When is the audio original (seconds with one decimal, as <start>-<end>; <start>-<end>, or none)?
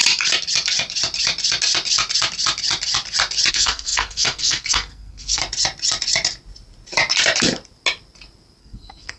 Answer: 0.0-3.5; 5.4-8.6